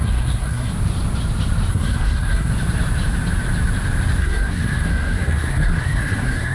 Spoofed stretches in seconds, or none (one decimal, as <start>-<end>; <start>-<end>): 0.0-0.7; 1.7-2.5; 4.2-6.5